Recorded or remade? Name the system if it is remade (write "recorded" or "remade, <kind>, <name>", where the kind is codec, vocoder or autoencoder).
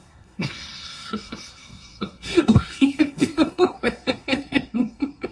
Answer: remade, codec, SNAC